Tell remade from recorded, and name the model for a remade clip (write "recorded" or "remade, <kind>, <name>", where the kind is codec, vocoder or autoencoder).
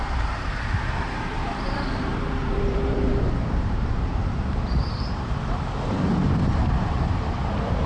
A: remade, vocoder, BigVGAN v2